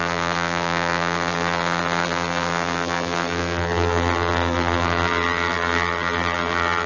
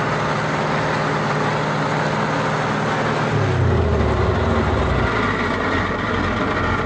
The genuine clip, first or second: second